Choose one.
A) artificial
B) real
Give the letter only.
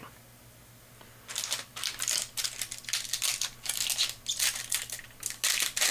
B